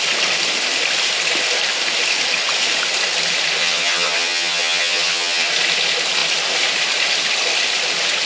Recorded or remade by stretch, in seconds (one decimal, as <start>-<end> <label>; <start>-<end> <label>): 0.0-3.6 recorded; 3.6-5.5 remade; 5.5-8.3 recorded